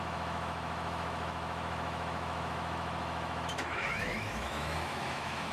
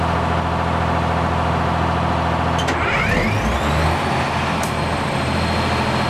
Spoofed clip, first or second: first